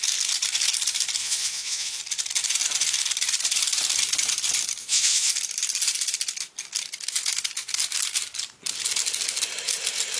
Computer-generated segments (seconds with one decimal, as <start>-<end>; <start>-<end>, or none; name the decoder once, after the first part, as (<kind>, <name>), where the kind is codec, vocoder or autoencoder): 1.2-2.0 (vocoder, Vocos); 4.8-5.3

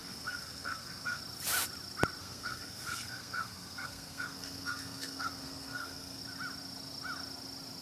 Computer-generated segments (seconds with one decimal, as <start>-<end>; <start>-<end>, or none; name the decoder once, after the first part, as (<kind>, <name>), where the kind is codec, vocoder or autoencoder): 0.0-1.2 (codec, SNAC); 2.2-6.2

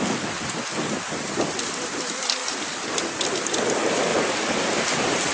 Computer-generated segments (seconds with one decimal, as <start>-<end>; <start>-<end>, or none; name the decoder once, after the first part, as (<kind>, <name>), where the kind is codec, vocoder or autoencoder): 2.4-3.3 (vocoder, BigVGAN v2); 4.1-4.6

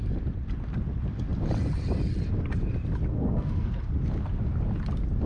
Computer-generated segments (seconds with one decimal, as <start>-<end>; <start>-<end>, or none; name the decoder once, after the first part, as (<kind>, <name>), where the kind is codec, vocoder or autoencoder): 3.1-3.8 (codec, SNAC)

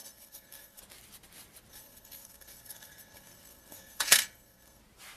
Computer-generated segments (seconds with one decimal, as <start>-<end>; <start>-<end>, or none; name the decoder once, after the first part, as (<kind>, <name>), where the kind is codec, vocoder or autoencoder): 0.0-0.8 (codec, SNAC); 1.7-4.8

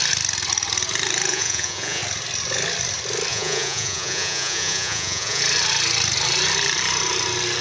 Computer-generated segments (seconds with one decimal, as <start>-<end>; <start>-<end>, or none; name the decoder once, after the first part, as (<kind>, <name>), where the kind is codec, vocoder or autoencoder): 1.3-2.0 (vocoder, Vocos); 3.3-5.4